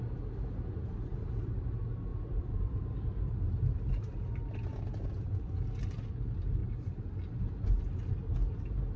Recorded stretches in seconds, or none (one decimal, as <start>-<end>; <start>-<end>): 0.0-2.1; 3.9-9.0